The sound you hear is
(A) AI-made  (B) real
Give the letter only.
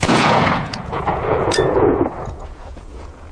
A